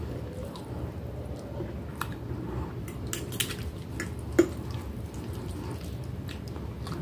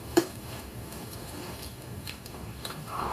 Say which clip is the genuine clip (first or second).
first